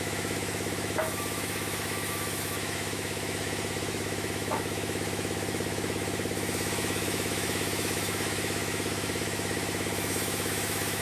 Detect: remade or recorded remade